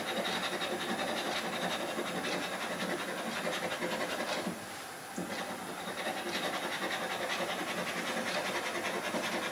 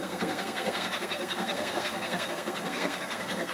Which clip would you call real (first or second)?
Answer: first